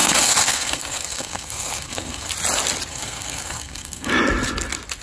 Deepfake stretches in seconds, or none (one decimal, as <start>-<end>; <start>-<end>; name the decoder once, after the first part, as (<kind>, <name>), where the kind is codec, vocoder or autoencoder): 0.0-2.3 (codec, SNAC); 2.9-4.1